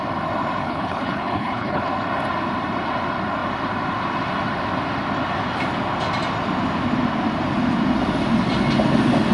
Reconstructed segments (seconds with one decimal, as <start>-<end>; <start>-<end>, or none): 0.6-1.8